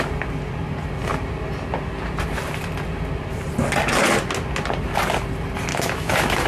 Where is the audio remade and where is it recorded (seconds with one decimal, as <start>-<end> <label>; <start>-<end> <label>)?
0.0-5.7 recorded; 5.7-6.5 remade